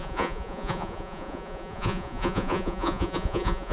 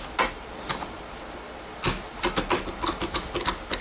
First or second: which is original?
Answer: second